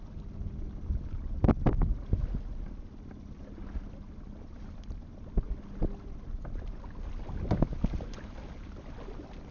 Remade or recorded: recorded